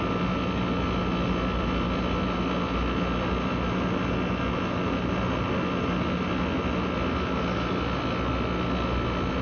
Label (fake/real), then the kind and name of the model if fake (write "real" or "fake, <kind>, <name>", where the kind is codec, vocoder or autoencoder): real